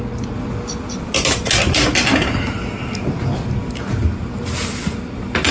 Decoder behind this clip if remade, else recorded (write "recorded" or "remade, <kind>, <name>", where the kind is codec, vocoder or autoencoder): recorded